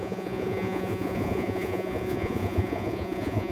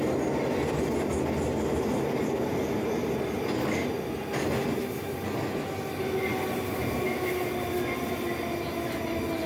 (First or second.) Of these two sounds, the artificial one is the first